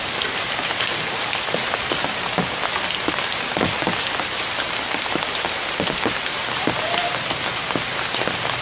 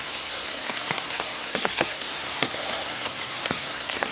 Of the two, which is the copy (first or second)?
second